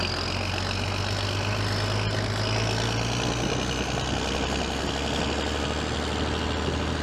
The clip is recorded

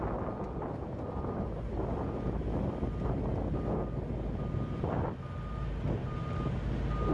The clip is recorded